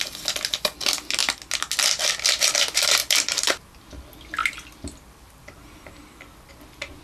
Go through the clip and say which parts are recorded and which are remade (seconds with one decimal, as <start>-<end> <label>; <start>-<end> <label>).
0.0-3.0 recorded; 3.0-3.8 remade; 3.8-4.4 recorded; 4.4-6.5 remade; 6.5-7.0 recorded